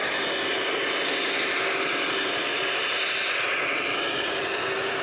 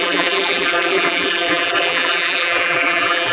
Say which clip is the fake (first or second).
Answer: second